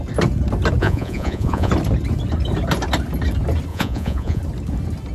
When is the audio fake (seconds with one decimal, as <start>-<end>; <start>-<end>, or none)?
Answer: 0.8-1.7; 3.7-4.4